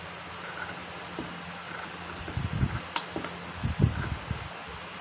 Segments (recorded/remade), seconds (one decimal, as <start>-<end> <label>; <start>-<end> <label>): 0.0-5.0 recorded

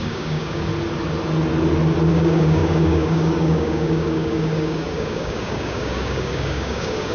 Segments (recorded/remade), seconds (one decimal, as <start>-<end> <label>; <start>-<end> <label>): 0.0-0.7 remade; 0.7-2.1 recorded; 2.1-7.1 remade

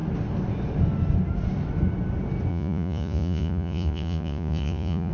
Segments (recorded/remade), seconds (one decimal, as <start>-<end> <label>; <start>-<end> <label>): 0.0-2.5 recorded; 2.5-5.1 remade

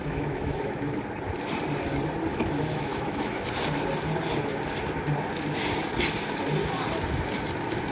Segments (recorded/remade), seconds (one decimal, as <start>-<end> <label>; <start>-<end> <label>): 0.0-1.0 remade; 1.0-2.3 recorded; 2.3-3.4 remade; 3.4-7.9 recorded

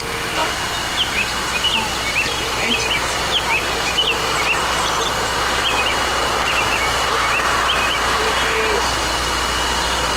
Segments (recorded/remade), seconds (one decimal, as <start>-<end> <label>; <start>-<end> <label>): 0.0-5.3 recorded; 5.3-9.1 remade; 9.1-10.2 recorded